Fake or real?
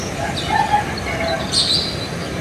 real